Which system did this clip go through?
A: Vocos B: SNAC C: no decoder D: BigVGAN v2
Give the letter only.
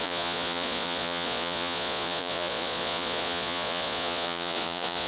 A